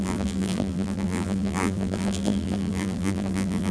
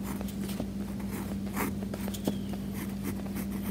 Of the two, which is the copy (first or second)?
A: first